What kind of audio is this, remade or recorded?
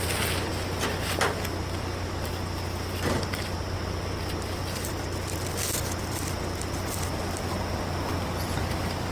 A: recorded